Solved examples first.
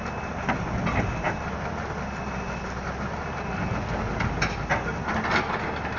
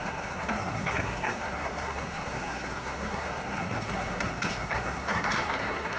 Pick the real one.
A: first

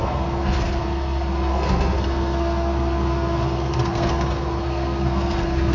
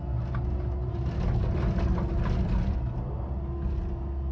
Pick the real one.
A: second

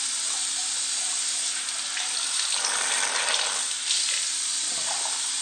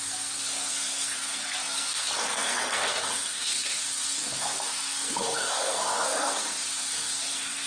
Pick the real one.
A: first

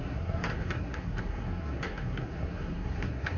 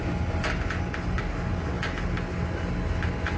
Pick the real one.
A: second